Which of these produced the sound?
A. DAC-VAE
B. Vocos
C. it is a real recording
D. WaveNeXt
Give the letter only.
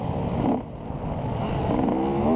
C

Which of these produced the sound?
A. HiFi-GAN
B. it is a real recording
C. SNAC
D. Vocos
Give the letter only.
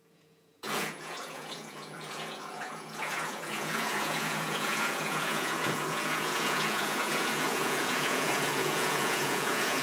D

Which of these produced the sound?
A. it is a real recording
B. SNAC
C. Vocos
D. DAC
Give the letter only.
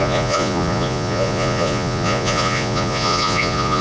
C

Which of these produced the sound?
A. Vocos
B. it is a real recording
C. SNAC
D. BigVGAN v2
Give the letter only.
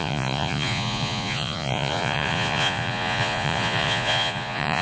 A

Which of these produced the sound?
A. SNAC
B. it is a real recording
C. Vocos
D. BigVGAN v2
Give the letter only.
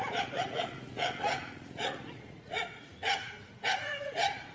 C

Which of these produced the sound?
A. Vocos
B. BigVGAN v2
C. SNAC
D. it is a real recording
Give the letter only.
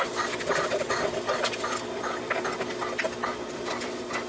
D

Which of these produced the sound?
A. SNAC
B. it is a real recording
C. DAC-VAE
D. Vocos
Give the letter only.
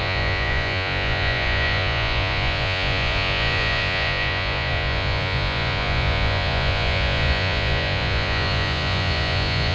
D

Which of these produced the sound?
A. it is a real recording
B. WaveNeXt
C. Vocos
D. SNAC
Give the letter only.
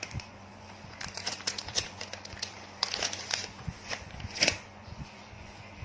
C